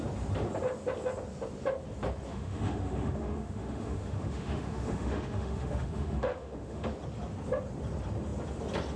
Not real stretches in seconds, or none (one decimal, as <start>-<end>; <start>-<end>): 2.3-6.9